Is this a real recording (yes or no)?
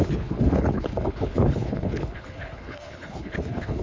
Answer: no